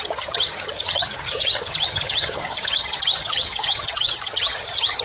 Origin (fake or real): fake